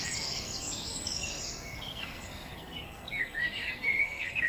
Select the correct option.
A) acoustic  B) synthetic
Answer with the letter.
B